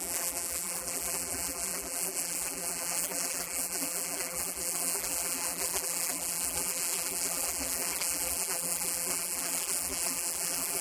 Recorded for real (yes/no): no